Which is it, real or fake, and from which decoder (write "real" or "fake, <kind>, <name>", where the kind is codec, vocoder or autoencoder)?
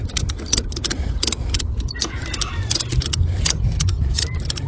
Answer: real